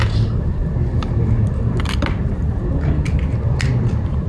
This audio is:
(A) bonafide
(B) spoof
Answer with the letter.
A